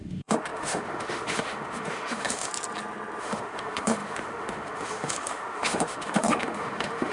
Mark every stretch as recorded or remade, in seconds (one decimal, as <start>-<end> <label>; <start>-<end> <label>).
0.0-2.5 remade; 2.5-3.2 recorded; 3.2-7.1 remade